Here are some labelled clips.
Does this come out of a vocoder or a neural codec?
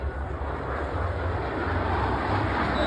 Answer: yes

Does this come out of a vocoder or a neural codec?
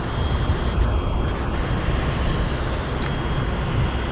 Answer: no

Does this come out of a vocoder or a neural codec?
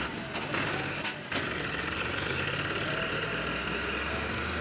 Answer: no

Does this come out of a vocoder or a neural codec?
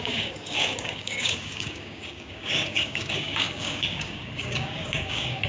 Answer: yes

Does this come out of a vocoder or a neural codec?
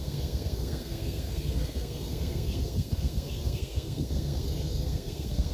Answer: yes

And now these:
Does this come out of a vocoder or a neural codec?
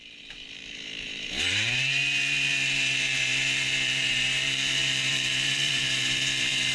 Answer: yes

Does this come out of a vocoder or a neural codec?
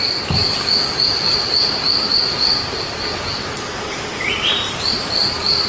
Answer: no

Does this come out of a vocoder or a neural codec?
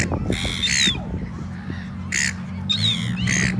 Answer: no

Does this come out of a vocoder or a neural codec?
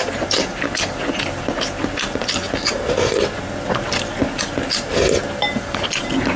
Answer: no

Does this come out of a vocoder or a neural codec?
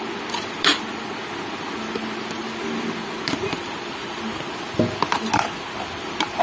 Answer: no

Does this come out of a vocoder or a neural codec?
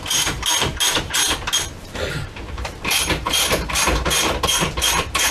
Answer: yes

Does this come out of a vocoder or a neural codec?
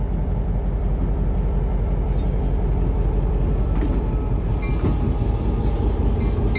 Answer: no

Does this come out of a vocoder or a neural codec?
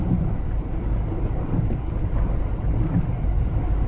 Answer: no